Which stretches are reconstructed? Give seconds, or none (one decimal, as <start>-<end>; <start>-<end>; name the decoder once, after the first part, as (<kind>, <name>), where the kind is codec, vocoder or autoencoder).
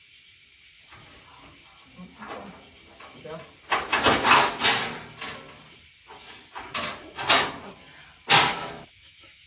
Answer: 8.5-9.5 (autoencoder, DAC-VAE)